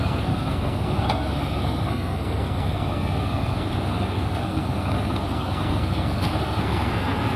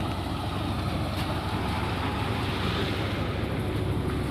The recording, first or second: second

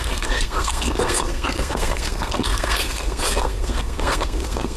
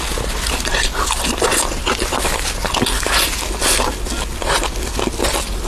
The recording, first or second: second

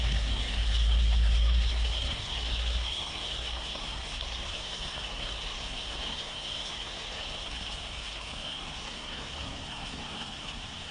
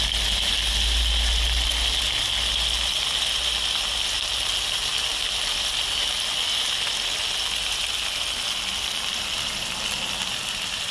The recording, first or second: second